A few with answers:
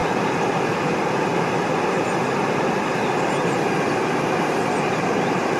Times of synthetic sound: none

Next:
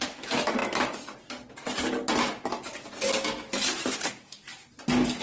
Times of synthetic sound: none